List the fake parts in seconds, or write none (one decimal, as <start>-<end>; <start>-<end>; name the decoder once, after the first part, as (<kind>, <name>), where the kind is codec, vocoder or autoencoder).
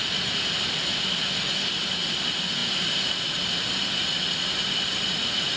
0.0-5.6 (vocoder, BigVGAN v2)